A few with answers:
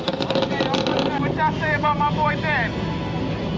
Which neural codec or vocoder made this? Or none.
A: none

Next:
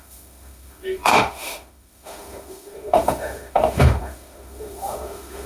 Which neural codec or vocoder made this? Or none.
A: autoencoder, DAC-VAE